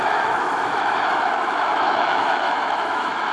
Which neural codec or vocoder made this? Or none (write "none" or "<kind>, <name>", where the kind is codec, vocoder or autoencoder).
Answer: autoencoder, DAC-VAE